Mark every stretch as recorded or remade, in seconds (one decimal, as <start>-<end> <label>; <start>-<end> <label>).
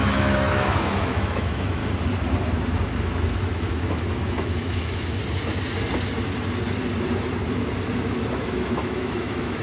0.0-1.8 remade; 1.8-3.0 recorded; 3.0-5.2 remade; 5.2-8.0 recorded; 8.0-9.6 remade